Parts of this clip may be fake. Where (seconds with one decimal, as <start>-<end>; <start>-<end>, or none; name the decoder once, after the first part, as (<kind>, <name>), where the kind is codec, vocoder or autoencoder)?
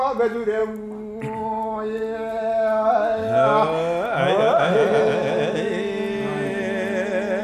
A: none